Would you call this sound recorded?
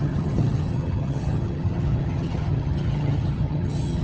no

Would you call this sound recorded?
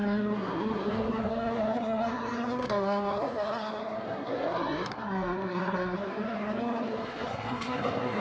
no